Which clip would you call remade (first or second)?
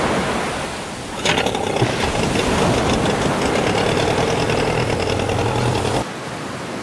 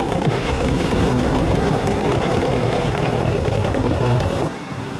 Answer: second